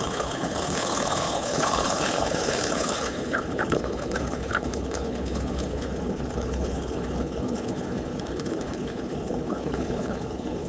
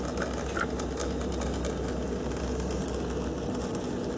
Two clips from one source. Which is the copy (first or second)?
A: first